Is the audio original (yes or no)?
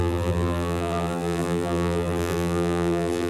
no